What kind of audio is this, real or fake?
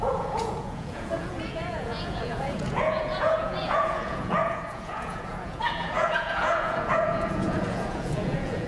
fake